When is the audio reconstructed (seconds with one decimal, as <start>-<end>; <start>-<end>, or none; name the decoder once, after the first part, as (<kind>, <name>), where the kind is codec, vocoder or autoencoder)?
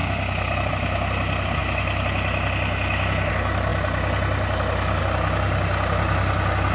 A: none